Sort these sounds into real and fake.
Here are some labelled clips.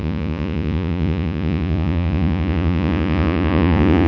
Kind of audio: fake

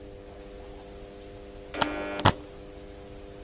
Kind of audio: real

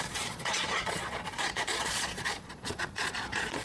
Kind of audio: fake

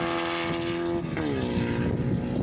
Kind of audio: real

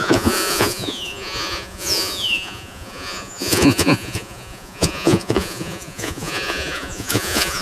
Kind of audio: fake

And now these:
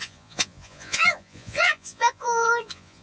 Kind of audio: fake